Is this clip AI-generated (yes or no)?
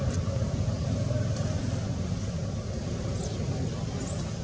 no